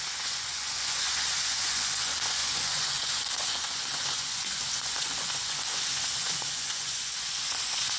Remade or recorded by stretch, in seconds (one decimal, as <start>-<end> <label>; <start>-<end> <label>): 0.0-8.0 remade